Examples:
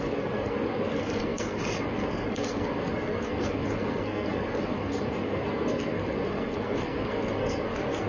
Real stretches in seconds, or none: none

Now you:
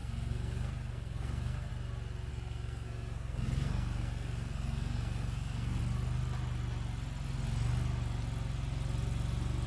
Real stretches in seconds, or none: 1.7-2.3; 5.8-9.7

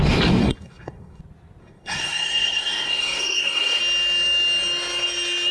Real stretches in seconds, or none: 0.0-0.4; 1.2-1.6; 3.8-5.5

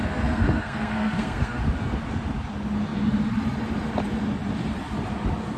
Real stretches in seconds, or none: 1.6-5.6

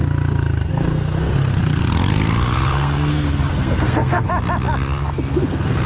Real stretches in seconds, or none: 0.0-0.7; 1.6-2.1; 4.3-5.3